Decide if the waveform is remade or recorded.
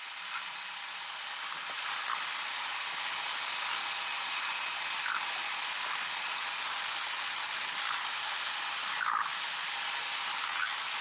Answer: recorded